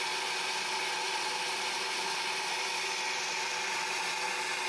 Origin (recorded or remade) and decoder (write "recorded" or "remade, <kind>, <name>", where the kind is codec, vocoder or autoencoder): recorded